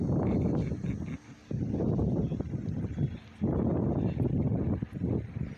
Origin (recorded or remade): recorded